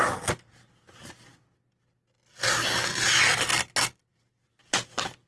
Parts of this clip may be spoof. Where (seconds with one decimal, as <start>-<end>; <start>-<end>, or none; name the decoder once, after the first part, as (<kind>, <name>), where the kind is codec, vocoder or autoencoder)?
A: none